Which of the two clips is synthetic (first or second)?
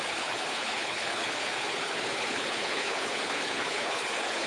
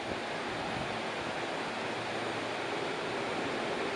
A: first